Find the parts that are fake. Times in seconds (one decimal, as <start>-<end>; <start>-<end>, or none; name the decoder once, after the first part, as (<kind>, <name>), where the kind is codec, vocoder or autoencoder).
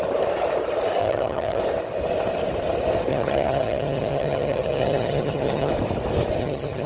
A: 1.0-1.6 (vocoder, HiFi-GAN); 3.1-5.7; 6.4-6.9